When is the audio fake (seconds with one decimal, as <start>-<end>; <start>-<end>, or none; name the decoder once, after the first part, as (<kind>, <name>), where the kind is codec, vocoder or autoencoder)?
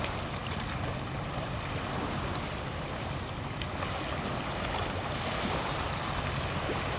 none